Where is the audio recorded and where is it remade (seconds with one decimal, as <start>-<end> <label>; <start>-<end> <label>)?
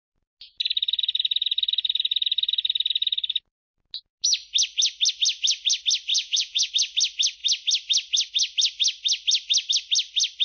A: 0.0-6.1 recorded; 6.1-6.7 remade; 6.7-10.4 recorded